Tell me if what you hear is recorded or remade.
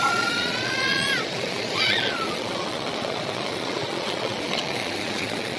remade